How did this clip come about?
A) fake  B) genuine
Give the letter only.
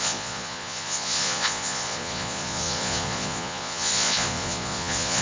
A